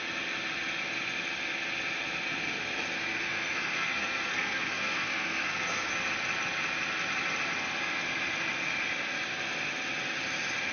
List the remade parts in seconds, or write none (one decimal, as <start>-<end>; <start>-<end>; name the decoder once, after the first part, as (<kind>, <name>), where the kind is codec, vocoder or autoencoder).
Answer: 3.1-5.9 (codec, SNAC)